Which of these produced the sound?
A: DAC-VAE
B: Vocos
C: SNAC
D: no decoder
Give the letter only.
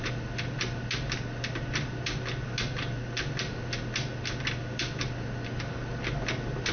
D